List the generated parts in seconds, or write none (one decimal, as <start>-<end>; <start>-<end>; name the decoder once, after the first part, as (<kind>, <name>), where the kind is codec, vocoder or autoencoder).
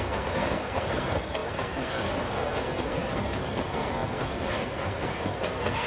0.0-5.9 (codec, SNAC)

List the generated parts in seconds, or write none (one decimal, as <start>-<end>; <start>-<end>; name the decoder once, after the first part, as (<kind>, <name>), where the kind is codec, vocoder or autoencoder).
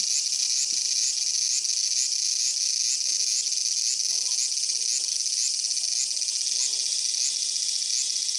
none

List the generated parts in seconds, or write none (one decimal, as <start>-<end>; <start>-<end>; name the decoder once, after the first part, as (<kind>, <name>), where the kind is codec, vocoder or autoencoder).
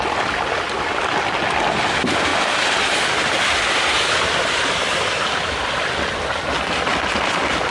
none